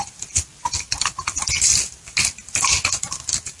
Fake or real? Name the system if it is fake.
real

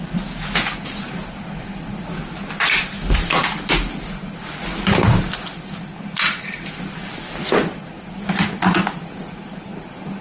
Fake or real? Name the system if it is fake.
real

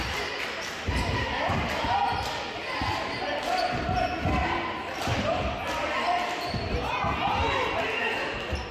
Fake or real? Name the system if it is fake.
real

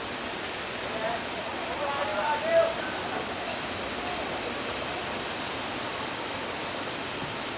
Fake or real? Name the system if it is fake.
fake, vocoder, BigVGAN v2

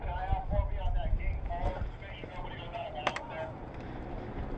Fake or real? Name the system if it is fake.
real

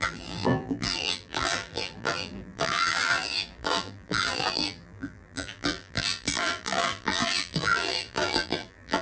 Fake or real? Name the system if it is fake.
fake, vocoder, BigVGAN v2